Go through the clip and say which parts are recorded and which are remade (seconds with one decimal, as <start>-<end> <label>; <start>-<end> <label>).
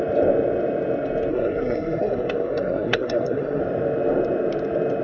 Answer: 0.0-1.3 recorded; 1.3-3.6 remade; 3.6-5.0 recorded